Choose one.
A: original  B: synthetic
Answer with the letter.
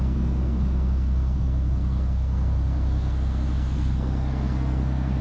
B